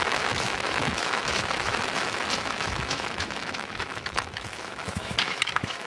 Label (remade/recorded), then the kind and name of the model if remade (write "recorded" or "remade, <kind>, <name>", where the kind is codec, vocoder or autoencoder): remade, autoencoder, DAC-VAE